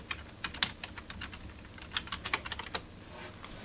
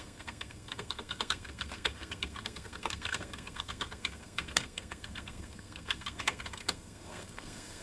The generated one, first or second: second